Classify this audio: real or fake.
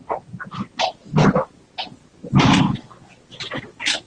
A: real